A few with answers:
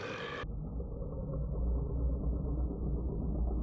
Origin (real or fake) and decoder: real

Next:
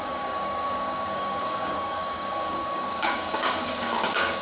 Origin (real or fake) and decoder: fake, codec, DAC